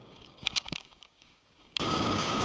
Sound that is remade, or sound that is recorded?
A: remade